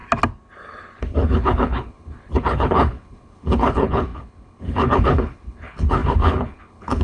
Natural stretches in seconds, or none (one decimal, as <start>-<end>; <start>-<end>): 0.0-1.0